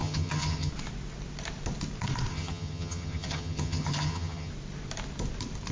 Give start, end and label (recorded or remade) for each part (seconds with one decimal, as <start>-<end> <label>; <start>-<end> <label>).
0.0-0.7 remade; 0.7-2.3 recorded; 2.3-4.5 remade; 4.5-5.7 recorded